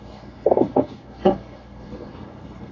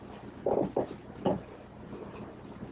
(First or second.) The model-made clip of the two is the first